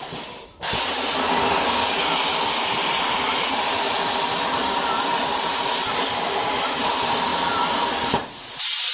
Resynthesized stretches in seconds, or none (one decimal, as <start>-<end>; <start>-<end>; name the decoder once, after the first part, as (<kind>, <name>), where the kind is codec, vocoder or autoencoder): none